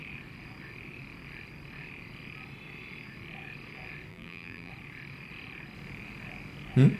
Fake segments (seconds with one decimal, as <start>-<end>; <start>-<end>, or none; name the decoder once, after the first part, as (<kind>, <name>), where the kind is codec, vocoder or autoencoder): 4.1-4.7 (vocoder, BigVGAN v2)